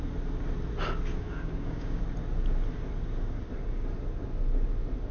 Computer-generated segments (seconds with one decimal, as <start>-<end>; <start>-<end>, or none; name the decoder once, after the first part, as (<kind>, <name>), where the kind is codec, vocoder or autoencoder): 1.1-2.0 (codec, DAC)